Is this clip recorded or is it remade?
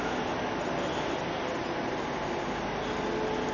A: recorded